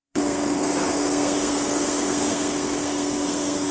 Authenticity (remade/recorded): remade